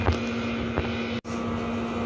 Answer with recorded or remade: recorded